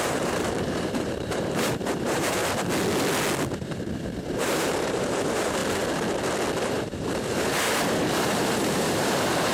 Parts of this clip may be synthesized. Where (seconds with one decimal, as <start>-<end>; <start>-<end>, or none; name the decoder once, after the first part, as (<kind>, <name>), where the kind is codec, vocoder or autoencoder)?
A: 0.0-2.4 (vocoder, BigVGAN v2); 3.6-5.6; 6.7-9.5